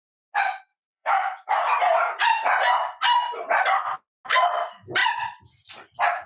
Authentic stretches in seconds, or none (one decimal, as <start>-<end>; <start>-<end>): 0.0-0.7; 2.8-5.0; 5.7-6.3